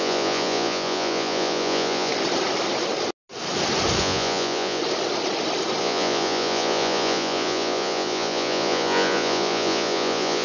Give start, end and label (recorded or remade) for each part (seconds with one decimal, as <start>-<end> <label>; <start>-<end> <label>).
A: 0.0-2.1 remade; 2.1-4.0 recorded; 4.0-4.8 remade; 4.8-5.8 recorded; 5.8-10.4 remade